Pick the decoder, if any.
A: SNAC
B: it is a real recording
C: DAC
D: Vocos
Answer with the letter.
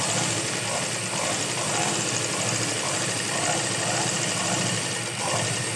B